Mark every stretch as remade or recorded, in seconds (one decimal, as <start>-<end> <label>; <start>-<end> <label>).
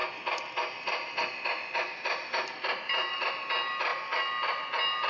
0.0-5.1 recorded